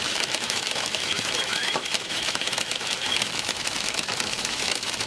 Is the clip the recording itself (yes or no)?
no